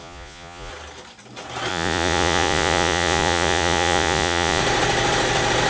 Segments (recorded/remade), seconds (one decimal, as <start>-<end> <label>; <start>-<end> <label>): 0.0-0.7 remade; 0.7-1.7 recorded; 1.7-4.6 remade; 4.6-5.7 recorded